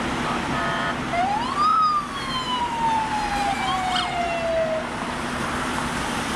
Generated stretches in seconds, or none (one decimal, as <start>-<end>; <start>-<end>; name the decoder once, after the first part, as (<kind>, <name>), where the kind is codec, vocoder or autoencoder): 0.0-3.7 (vocoder, BigVGAN v2); 5.2-6.4